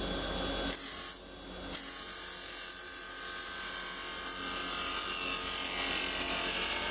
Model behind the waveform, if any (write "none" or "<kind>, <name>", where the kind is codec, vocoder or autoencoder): none